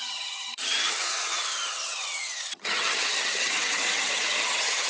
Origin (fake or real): fake